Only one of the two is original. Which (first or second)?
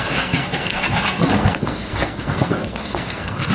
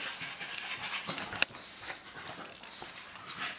second